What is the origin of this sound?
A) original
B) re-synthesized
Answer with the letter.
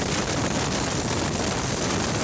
A